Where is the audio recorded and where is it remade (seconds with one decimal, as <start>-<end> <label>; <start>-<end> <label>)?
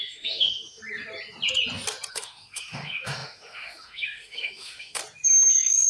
0.0-0.8 remade; 0.8-2.1 recorded; 2.1-5.0 remade; 5.0-5.5 recorded; 5.5-5.9 remade